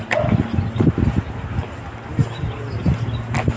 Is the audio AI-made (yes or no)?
no